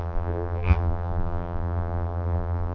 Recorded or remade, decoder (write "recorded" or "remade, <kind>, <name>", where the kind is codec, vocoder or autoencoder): remade, vocoder, BigVGAN v2